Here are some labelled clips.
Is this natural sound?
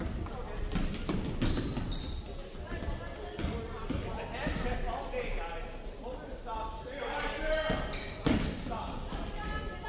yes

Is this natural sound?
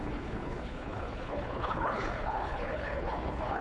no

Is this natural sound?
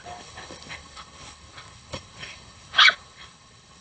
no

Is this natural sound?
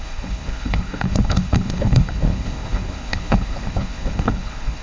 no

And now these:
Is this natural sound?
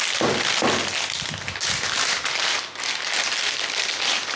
yes